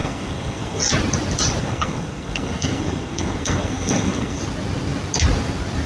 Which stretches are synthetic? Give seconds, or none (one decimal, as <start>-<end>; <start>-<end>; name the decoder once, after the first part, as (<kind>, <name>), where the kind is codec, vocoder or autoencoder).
0.0-0.8 (codec, SNAC); 1.6-4.4